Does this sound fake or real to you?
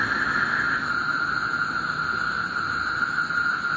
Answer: real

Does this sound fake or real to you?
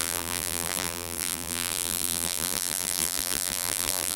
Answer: fake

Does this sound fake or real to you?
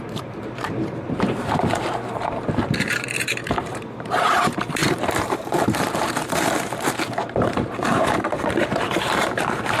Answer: fake